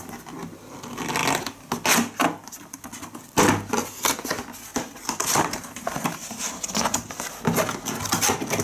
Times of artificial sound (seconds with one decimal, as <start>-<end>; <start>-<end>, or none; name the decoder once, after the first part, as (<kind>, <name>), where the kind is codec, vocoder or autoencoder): 4.7-7.1 (vocoder, BigVGAN v2)